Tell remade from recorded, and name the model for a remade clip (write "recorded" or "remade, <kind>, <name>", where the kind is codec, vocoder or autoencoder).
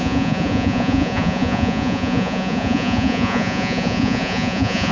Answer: remade, vocoder, Vocos